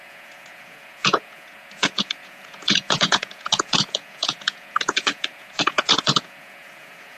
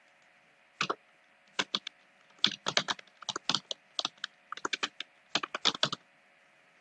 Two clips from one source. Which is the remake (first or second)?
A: first